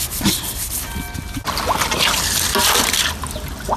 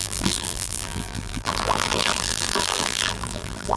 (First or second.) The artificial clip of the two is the second